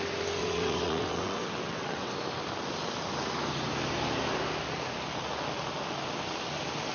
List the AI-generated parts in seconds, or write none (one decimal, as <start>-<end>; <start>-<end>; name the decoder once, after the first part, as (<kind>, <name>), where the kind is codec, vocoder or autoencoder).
0.4-2.1 (vocoder, WaveNeXt)